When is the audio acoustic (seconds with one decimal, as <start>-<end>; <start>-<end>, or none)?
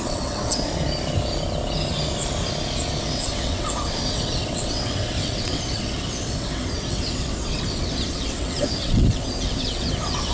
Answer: 0.7-3.0